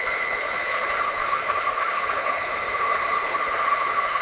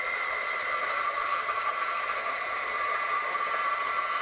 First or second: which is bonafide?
second